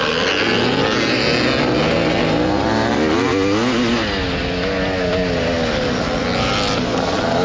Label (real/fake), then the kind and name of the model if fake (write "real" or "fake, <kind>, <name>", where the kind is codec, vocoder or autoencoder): real